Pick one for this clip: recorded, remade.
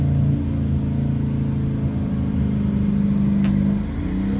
recorded